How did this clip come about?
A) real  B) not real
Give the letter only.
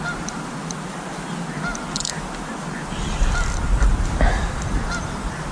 A